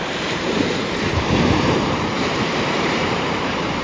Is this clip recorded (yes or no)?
no